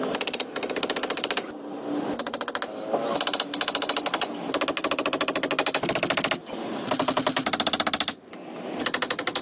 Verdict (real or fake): real